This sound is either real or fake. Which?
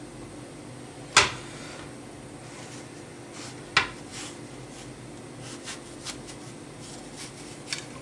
real